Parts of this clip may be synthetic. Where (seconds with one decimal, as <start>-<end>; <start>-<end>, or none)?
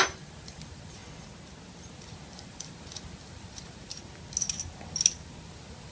0.0-1.0; 2.0-4.0; 5.5-5.9